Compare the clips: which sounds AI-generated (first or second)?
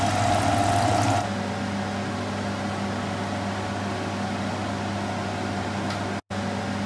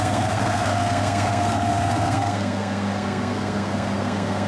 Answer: second